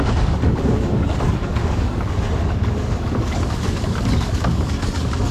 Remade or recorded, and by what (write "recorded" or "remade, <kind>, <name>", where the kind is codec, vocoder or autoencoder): remade, codec, DAC